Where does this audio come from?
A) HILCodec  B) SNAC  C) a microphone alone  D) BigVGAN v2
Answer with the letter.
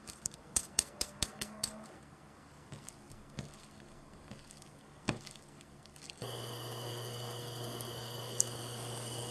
B